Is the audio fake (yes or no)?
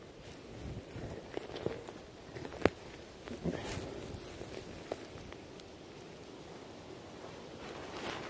no